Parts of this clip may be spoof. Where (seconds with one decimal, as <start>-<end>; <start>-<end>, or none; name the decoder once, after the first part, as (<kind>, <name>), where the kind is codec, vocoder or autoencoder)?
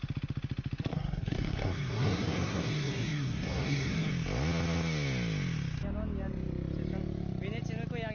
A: 0.9-4.1 (codec, SNAC)